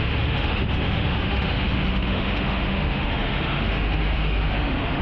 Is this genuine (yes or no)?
no